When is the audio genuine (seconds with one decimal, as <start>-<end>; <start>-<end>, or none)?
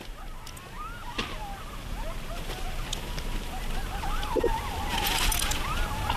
0.0-6.2